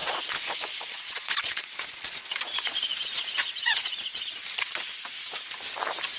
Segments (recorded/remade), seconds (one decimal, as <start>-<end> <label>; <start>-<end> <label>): 0.0-4.4 remade; 4.4-6.2 recorded